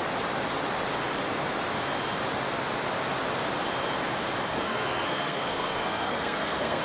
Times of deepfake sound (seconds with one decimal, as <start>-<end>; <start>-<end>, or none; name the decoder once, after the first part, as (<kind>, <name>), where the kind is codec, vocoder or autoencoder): 4.5-6.8 (codec, SNAC)